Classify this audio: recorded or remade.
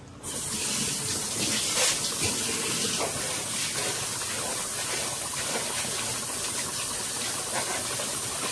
recorded